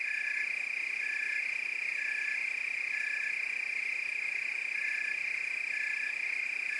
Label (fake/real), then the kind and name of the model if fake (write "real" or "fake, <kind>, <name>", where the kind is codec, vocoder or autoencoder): real